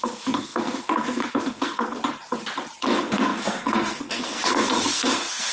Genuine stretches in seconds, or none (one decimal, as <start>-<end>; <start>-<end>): 2.0-2.8